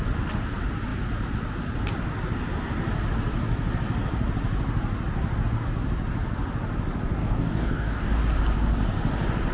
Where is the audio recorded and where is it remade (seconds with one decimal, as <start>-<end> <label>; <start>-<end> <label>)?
0.0-7.2 recorded; 7.2-8.2 remade; 8.2-9.5 recorded